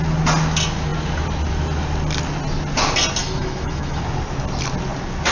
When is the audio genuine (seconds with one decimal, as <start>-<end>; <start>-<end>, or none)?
0.0-3.2; 4.0-5.3